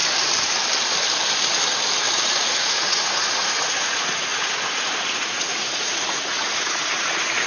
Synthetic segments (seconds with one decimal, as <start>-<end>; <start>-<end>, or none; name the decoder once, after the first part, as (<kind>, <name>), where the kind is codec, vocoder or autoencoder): 2.2-7.5 (vocoder, Vocos)